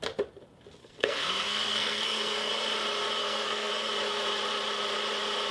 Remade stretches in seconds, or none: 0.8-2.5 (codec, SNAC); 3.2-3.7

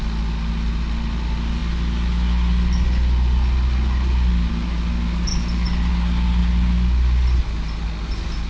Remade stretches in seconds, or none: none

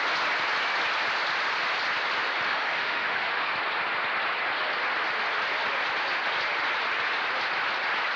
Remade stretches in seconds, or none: 2.5-3.5 (autoencoder, DAC-VAE)

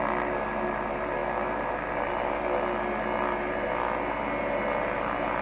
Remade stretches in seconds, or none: none

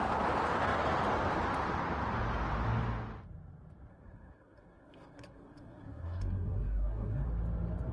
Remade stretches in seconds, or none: 3.9-7.3 (codec, SNAC)